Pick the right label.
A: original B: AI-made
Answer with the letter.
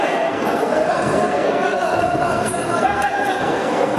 B